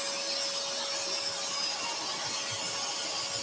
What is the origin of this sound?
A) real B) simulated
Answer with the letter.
A